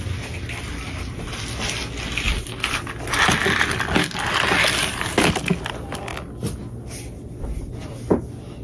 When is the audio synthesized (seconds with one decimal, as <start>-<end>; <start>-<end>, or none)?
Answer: none